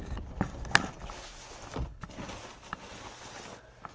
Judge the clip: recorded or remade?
recorded